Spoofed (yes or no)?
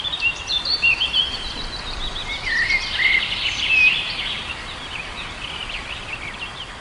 yes